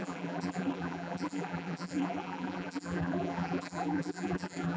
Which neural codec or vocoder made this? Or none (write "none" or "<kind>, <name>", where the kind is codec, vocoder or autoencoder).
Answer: vocoder, BigVGAN v2